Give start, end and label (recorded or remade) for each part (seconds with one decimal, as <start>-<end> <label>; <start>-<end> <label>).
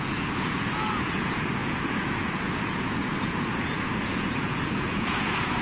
0.0-5.6 remade